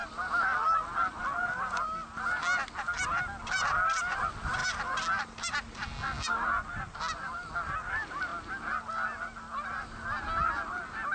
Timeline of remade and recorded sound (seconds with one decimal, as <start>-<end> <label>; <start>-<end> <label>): 0.0-1.2 remade; 1.2-11.1 recorded